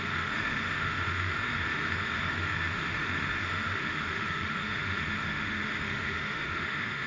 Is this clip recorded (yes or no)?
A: no